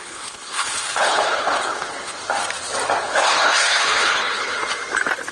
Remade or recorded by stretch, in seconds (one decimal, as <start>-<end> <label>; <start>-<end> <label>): 0.0-2.2 remade; 2.2-3.0 recorded; 3.0-4.6 remade; 4.6-5.3 recorded